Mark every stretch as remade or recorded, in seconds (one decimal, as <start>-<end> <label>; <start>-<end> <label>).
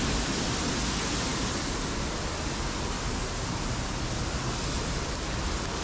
0.0-5.8 recorded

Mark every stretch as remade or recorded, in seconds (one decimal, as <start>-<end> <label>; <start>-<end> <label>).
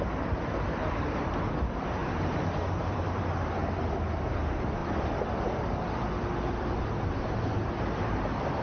0.0-4.8 remade; 4.8-6.8 recorded; 6.8-8.6 remade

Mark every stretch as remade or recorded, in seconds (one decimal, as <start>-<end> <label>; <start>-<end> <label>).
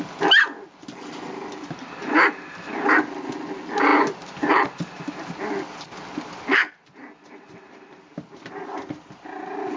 0.0-9.8 recorded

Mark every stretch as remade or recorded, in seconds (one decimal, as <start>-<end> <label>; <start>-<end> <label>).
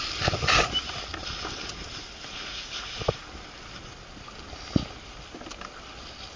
0.0-6.4 recorded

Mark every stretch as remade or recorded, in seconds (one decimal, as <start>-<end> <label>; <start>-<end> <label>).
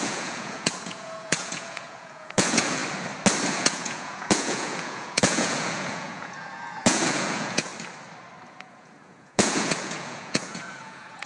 0.0-2.8 remade; 2.8-3.5 recorded; 3.5-7.7 remade; 7.7-8.5 recorded; 8.5-11.3 remade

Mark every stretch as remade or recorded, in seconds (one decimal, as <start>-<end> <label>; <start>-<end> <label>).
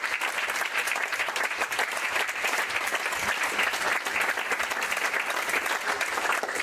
0.0-2.9 remade; 2.9-5.9 recorded; 5.9-6.6 remade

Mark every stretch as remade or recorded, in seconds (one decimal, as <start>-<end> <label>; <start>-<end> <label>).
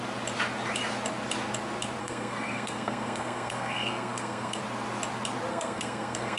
0.0-2.0 recorded; 2.0-4.6 remade; 4.6-5.5 recorded; 5.5-6.4 remade